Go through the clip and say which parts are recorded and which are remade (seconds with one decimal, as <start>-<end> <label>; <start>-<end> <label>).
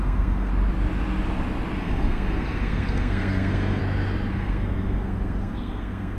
0.0-0.5 remade; 0.5-1.8 recorded; 1.8-3.8 remade; 3.8-4.3 recorded; 4.3-6.2 remade